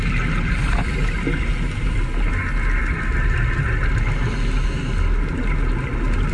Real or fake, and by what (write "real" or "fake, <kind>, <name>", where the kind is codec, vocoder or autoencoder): real